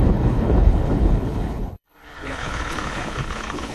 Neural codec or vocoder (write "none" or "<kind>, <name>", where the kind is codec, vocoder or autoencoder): codec, HILCodec